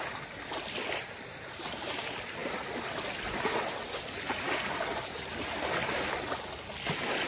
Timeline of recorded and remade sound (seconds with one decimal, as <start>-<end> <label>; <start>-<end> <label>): 0.0-7.3 recorded

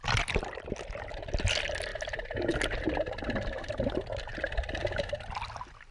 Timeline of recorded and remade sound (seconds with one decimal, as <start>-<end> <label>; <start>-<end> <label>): 0.0-5.9 recorded

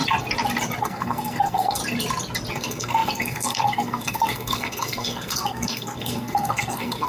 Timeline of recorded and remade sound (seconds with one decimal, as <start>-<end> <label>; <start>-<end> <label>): 0.0-0.8 recorded; 0.8-1.8 remade; 1.8-2.5 recorded; 2.5-7.1 remade

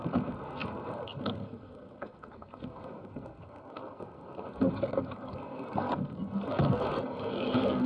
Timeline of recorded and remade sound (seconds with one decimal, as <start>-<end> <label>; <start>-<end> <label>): 0.0-7.9 remade

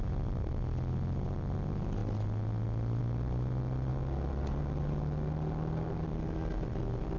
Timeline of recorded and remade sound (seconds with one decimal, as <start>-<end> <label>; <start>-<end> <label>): 0.0-7.2 recorded